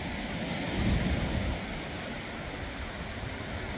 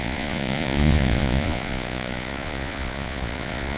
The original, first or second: first